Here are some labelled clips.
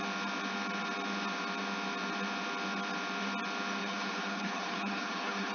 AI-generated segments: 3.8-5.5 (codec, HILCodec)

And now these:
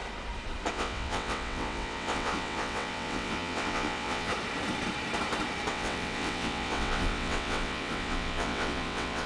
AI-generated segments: 0.7-4.3 (vocoder, WaveNeXt); 5.7-9.3

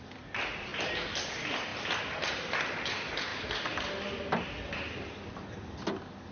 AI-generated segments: none

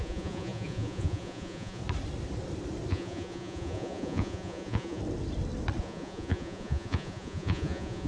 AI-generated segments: 0.0-1.8 (vocoder, Vocos); 2.9-5.0; 5.8-8.1

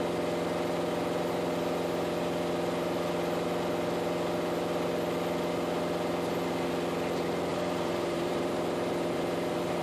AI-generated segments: 7.5-9.8 (vocoder, BigVGAN v2)